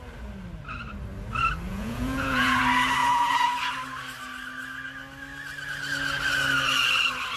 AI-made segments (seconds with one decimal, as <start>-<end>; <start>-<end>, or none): 1.7-2.6; 3.0-3.7